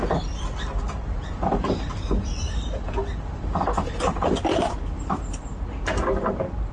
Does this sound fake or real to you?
real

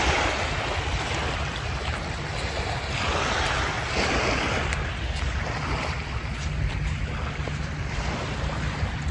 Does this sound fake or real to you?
real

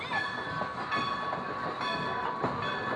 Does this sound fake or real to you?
real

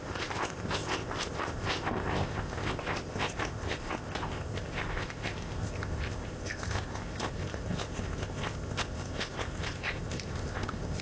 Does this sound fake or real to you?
fake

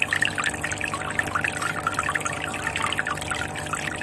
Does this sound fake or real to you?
real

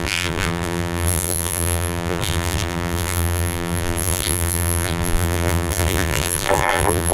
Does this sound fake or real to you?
fake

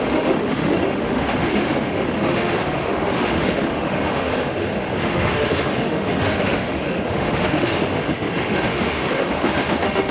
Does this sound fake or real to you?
fake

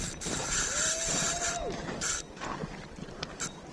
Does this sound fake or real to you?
fake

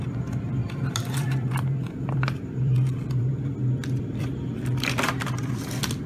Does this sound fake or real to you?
fake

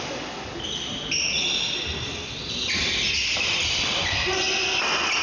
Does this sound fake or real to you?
real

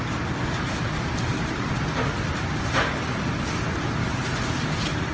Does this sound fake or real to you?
real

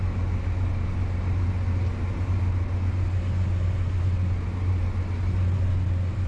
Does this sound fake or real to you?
real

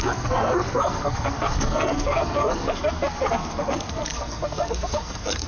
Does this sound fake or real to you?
fake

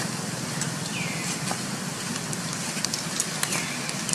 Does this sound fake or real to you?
real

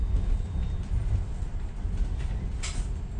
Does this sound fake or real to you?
real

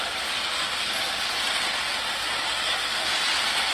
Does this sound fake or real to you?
real